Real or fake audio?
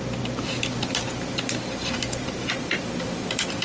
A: real